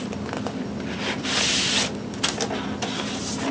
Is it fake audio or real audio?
real